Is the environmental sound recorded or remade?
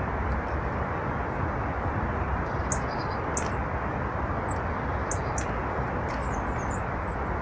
recorded